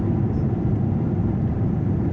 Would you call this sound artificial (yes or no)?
no